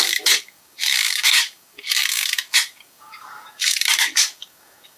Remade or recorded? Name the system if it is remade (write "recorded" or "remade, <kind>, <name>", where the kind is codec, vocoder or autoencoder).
remade, codec, DAC